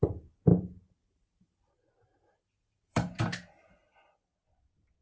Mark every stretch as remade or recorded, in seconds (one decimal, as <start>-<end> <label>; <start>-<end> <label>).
0.0-0.5 recorded; 0.5-3.2 remade; 3.2-5.0 recorded